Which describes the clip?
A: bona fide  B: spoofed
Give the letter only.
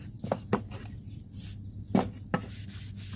A